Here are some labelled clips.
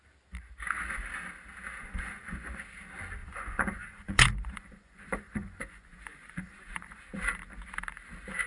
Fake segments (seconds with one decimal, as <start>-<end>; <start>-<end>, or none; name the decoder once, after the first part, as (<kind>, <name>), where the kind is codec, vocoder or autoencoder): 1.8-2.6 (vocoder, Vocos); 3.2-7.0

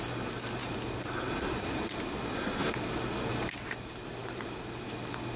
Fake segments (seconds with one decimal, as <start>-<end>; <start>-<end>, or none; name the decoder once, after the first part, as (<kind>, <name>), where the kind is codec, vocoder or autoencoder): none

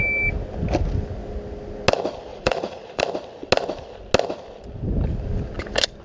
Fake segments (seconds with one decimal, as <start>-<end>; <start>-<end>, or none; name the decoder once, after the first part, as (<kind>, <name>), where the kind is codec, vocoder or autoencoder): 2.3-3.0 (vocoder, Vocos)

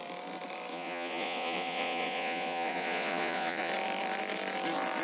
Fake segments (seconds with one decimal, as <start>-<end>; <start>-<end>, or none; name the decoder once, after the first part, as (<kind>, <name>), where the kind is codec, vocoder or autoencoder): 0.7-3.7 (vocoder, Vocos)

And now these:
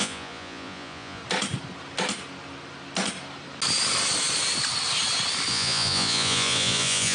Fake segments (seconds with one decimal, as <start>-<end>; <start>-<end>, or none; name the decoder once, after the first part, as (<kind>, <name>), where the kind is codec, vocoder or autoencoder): 0.0-1.2 (vocoder, Vocos); 5.5-7.1

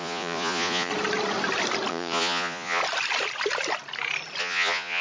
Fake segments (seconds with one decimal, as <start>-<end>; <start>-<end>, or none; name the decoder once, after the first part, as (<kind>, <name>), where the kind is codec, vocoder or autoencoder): 0.0-0.9 (vocoder, Vocos); 1.9-2.8; 4.4-5.0

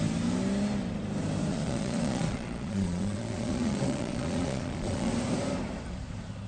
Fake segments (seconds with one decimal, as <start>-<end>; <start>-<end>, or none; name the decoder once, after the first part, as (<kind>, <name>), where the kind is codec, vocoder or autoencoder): 1.5-5.1 (vocoder, Vocos)

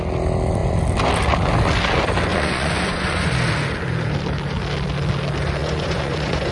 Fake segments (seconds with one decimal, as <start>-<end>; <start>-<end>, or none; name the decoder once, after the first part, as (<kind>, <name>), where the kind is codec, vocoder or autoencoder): 2.3-3.3 (vocoder, Vocos); 5.6-6.5